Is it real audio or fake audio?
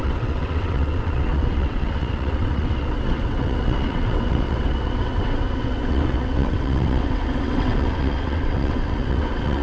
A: fake